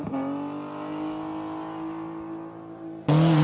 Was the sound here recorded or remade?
recorded